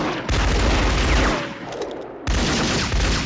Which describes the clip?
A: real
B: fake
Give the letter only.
A